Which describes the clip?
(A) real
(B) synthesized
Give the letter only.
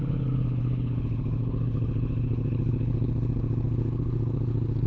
B